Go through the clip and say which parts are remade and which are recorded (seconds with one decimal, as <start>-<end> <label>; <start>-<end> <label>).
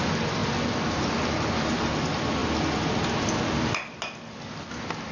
0.0-5.1 recorded